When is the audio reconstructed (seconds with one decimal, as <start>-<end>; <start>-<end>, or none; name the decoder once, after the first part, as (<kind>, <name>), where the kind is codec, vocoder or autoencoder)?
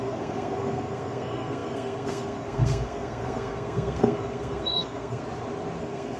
0.0-5.2 (codec, SNAC); 5.8-6.2